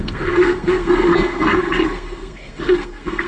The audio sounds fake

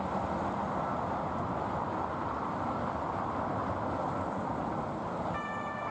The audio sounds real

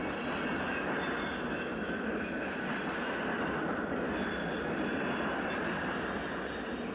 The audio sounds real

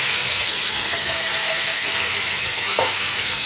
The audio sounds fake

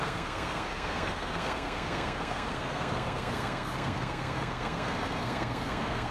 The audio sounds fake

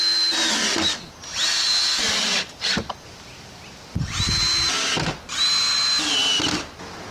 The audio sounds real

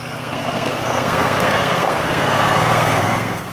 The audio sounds fake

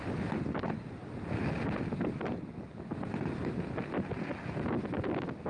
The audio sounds real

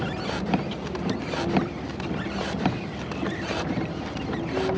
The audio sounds real